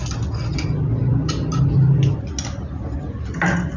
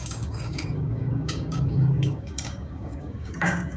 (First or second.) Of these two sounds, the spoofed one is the second